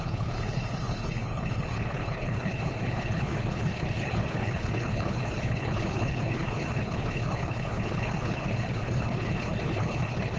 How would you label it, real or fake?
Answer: fake